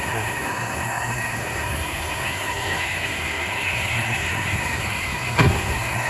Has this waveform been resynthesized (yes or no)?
yes